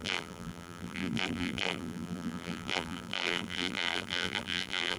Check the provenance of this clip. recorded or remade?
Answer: remade